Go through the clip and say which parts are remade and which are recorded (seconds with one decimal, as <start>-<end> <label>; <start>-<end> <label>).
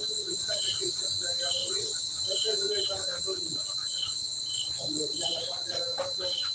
0.0-1.1 remade; 1.1-1.6 recorded; 1.6-2.2 remade; 2.2-3.8 recorded; 3.8-5.8 remade; 5.8-6.5 recorded